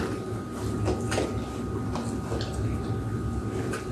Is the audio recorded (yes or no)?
yes